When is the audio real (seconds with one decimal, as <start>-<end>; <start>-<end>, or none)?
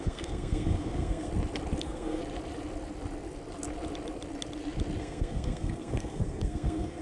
1.3-1.8; 2.2-5.0